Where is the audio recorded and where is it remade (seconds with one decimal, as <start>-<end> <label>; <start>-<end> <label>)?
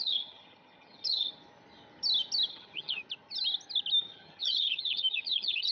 0.0-1.3 remade; 1.3-2.5 recorded; 2.5-3.0 remade; 3.0-4.0 recorded; 4.0-5.7 remade